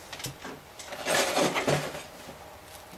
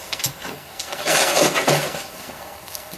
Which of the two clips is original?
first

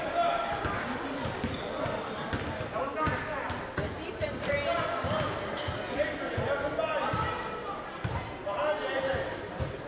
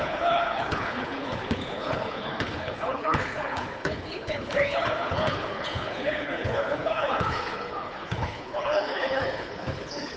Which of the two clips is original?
first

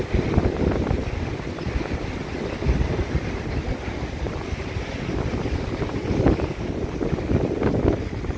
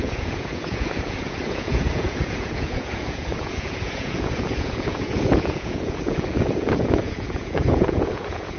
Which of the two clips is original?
first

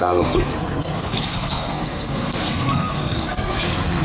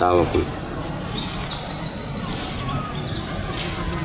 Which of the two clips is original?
second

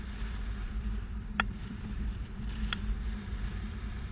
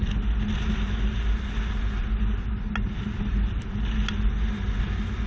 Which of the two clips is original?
second